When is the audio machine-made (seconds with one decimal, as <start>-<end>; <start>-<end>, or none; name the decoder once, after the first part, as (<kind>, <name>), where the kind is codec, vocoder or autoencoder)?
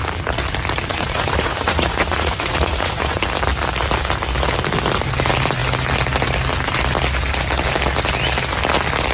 0.9-3.2 (vocoder, Vocos)